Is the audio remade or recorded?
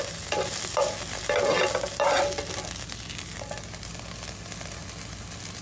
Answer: recorded